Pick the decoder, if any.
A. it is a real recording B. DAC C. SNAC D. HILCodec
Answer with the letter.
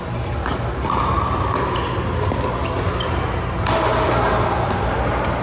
A